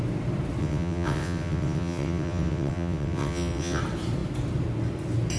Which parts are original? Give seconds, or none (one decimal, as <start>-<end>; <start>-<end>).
0.0-0.6; 3.8-5.4